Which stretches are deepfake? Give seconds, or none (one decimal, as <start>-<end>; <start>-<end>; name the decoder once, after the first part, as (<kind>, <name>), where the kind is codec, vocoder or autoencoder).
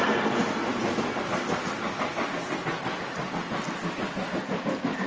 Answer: none